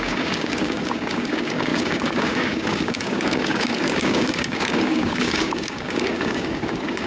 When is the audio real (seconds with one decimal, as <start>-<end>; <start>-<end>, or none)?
none

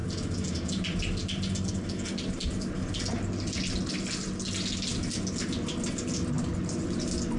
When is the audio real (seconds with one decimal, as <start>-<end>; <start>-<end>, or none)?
0.0-7.4

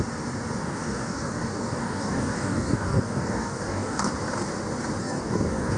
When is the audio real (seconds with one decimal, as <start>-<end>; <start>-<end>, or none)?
0.0-0.6; 4.1-5.0

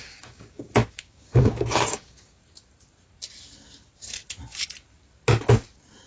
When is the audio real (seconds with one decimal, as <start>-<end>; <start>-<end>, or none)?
2.4-6.1

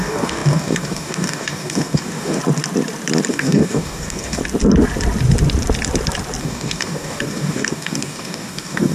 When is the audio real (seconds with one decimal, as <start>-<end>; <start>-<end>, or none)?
2.4-3.3; 4.4-6.4